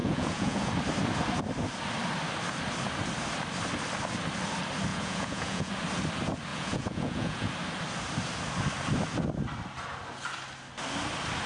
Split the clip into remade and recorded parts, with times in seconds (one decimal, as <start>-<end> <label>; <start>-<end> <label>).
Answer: 0.0-0.7 remade; 0.7-4.9 recorded; 4.9-5.7 remade; 5.7-6.5 recorded; 6.5-7.5 remade; 7.5-11.5 recorded